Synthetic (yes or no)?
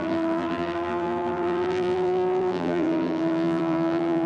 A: yes